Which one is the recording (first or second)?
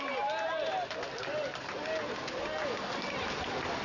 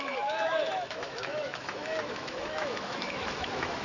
first